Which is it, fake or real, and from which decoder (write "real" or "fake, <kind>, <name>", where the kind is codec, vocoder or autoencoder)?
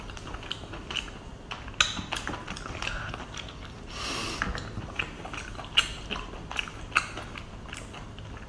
real